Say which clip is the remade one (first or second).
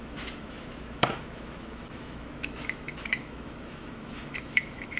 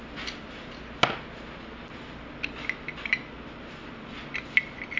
first